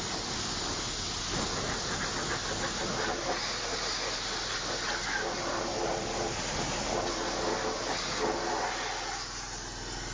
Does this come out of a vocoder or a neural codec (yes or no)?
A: no